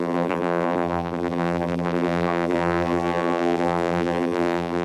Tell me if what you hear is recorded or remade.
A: remade